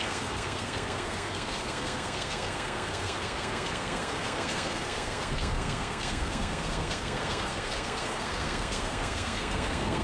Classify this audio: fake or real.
fake